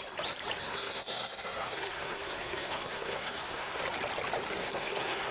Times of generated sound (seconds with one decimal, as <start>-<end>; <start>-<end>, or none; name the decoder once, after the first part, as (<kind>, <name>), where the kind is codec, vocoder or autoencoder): 0.6-3.8 (codec, SNAC); 4.6-5.3